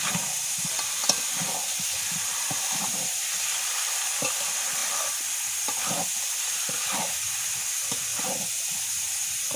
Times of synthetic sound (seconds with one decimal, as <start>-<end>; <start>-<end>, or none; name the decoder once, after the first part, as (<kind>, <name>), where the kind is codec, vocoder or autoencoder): 2.3-3.9 (vocoder, BigVGAN v2); 4.8-7.1; 8.1-8.6